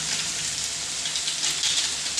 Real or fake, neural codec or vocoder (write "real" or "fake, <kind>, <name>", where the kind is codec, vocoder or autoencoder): real